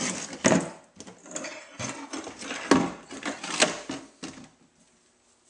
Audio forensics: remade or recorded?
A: recorded